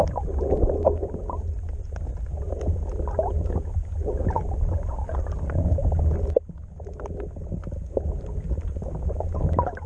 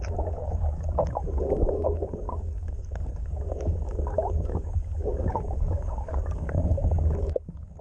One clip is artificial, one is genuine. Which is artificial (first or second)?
second